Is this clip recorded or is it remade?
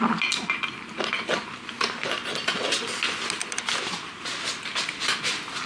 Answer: recorded